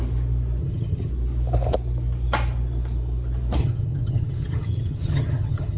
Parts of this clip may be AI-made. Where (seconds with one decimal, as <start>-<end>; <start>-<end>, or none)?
0.6-1.1; 3.6-5.8